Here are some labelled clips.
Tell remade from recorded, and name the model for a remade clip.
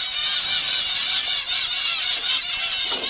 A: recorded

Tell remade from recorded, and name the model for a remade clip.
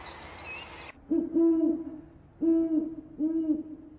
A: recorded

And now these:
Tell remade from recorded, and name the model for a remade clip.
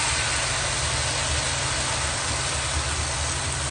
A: recorded